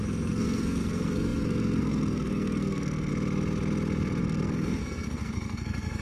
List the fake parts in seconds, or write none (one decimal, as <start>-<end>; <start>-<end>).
0.0-3.1; 4.2-6.0

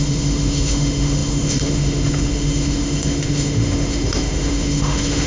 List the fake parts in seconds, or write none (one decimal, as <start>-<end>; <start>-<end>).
0.0-5.3

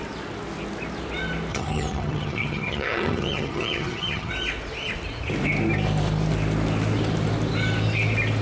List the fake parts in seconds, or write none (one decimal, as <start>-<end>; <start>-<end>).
1.5-4.3

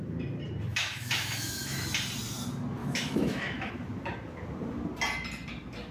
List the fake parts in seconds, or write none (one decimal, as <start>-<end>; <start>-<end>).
0.7-1.8; 2.8-3.7

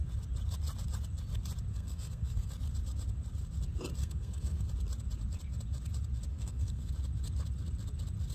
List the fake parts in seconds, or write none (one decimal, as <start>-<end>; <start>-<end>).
1.7-2.5; 4.0-4.7; 6.3-6.9

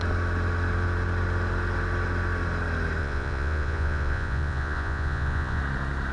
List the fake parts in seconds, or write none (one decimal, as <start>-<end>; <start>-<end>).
3.0-5.6

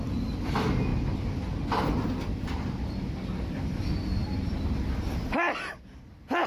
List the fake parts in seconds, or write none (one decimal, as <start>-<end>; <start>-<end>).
none

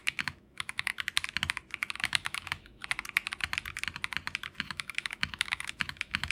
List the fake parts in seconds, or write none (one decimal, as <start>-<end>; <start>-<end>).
0.0-0.9; 2.0-2.8; 4.6-6.3